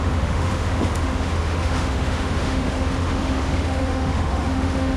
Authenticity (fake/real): fake